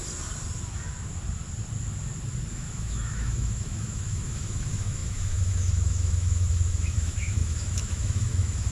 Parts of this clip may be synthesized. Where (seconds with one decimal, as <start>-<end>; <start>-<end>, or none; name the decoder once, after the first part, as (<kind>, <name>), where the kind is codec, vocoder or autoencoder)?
2.5-8.7 (autoencoder, DAC-VAE)